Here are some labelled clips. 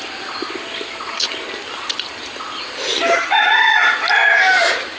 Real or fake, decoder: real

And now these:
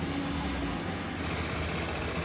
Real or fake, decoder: real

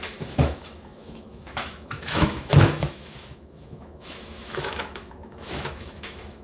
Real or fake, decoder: fake, autoencoder, DAC-VAE